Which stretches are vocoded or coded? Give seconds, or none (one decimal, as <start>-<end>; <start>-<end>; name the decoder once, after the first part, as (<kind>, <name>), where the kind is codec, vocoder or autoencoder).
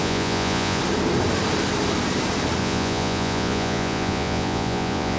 0.0-0.8 (vocoder, Vocos); 2.6-5.2